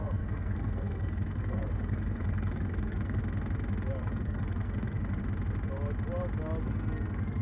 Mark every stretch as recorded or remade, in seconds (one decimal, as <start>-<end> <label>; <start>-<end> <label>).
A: 0.0-3.2 remade; 3.2-4.0 recorded; 4.0-5.2 remade; 5.2-6.6 recorded; 6.6-7.4 remade